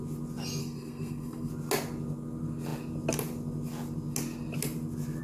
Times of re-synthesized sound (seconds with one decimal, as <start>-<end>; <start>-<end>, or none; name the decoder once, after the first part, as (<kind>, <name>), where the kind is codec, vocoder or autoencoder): 0.6-1.5 (codec, SNAC)